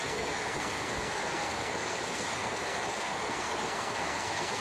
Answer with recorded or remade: remade